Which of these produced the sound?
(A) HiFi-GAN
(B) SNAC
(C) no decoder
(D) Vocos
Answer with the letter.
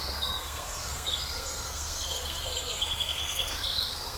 B